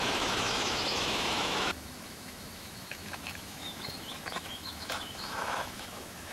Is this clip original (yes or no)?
no